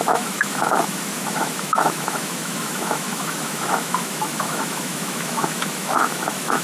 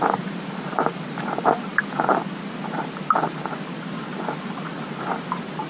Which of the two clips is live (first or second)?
second